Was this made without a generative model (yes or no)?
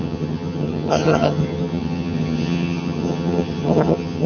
no